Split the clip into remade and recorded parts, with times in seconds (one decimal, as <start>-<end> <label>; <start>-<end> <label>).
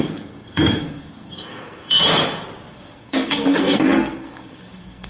0.0-2.0 remade; 2.0-2.7 recorded; 2.7-5.1 remade